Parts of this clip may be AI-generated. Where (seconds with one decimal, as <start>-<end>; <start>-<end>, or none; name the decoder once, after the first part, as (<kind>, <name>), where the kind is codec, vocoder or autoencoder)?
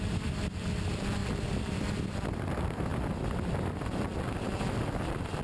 0.0-5.4 (vocoder, BigVGAN v2)